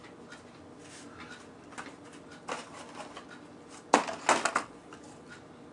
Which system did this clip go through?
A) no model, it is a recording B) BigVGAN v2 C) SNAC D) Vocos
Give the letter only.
A